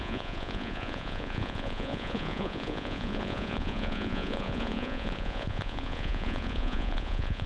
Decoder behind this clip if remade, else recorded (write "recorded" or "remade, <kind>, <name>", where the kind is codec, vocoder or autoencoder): remade, vocoder, Vocos